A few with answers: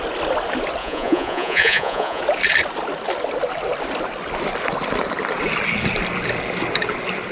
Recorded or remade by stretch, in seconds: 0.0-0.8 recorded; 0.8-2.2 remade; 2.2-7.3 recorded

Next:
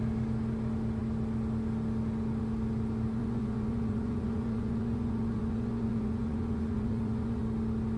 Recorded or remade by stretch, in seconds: 0.0-3.2 recorded; 3.2-7.4 remade; 7.4-8.0 recorded